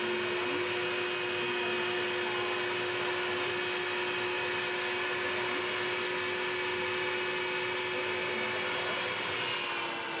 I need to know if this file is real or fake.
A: real